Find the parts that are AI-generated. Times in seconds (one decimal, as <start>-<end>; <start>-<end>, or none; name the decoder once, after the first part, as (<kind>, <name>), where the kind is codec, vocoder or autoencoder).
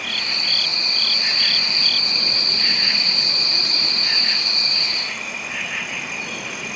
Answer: none